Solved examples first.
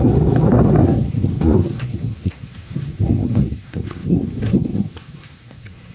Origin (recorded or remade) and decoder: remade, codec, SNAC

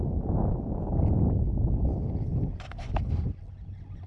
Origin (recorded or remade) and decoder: recorded